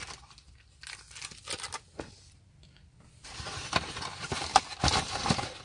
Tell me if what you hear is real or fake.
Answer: fake